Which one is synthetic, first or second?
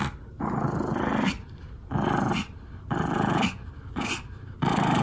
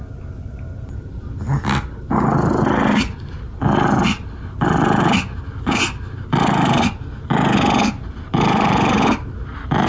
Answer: first